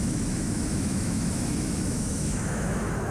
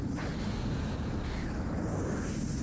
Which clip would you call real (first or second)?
second